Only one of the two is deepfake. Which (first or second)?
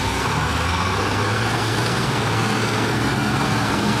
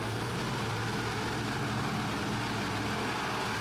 first